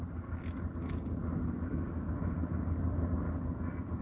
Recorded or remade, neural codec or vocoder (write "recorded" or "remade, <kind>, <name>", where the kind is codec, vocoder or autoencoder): recorded